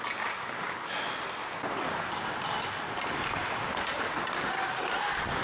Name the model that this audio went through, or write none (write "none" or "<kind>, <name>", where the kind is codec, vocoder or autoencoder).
none